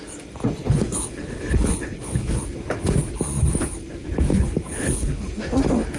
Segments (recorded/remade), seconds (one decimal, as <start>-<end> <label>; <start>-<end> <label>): 0.0-0.6 recorded; 0.6-2.4 remade; 2.4-4.3 recorded; 4.3-5.3 remade; 5.3-6.0 recorded